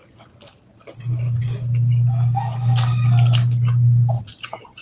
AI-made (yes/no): no